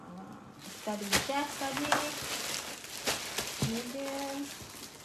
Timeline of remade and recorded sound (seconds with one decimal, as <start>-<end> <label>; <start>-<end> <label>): 0.0-5.0 recorded